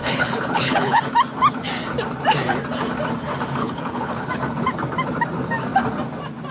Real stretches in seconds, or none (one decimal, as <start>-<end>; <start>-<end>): 1.0-3.6; 4.3-6.5